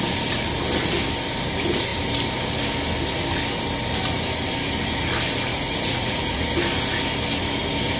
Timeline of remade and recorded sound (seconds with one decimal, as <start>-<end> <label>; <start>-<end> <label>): 0.0-5.5 recorded; 5.5-6.4 remade; 6.4-8.0 recorded